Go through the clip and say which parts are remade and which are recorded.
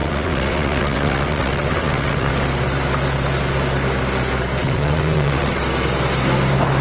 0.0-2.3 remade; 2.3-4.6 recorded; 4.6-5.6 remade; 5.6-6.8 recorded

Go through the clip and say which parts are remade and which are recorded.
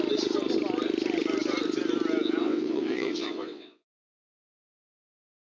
0.0-2.4 recorded; 2.4-4.5 remade; 4.5-5.6 recorded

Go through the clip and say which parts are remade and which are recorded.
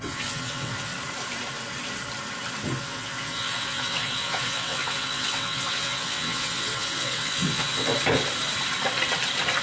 0.0-0.9 remade; 0.9-2.8 recorded; 2.8-7.9 remade; 7.9-9.6 recorded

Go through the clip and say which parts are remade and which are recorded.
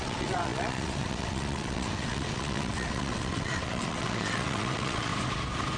0.0-5.1 remade; 5.1-5.8 recorded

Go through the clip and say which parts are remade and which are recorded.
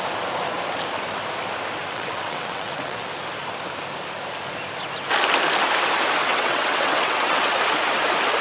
0.0-1.9 recorded; 1.9-3.0 remade; 3.0-6.2 recorded; 6.2-7.6 remade; 7.6-8.4 recorded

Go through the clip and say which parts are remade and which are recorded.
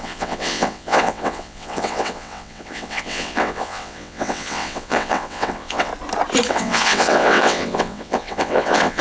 0.0-5.9 remade; 5.9-6.5 recorded; 6.5-9.0 remade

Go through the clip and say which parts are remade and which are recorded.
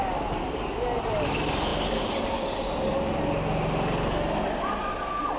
0.0-5.4 recorded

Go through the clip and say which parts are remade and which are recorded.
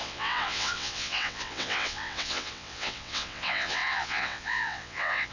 0.0-5.3 remade